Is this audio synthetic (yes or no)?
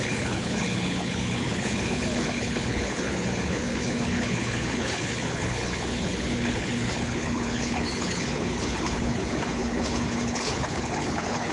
yes